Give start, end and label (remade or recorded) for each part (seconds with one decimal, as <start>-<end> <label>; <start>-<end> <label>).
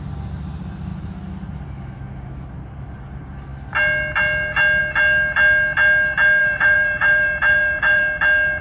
0.0-6.4 recorded; 6.4-8.0 remade; 8.0-8.6 recorded